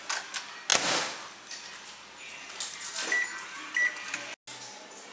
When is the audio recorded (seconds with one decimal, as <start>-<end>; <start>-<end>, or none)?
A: 0.0-5.1